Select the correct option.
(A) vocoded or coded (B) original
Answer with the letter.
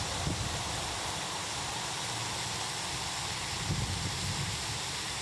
B